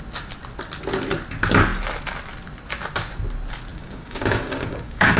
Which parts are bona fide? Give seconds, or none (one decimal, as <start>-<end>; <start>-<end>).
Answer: 0.0-3.7